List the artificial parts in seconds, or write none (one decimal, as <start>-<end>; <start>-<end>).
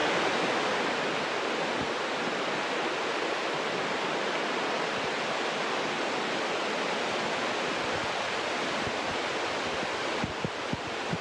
none